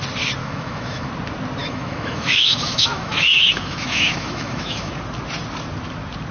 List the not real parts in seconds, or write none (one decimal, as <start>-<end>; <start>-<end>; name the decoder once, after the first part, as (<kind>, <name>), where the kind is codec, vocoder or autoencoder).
0.4-1.1 (autoencoder, DAC-VAE); 1.6-4.9